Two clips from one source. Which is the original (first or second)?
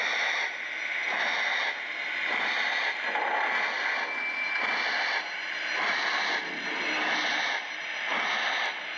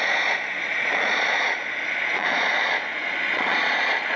first